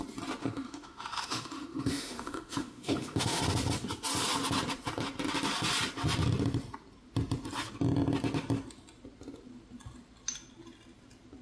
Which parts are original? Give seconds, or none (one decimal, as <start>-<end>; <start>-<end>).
0.0-0.4; 3.4-11.4